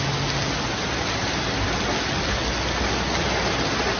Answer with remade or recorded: recorded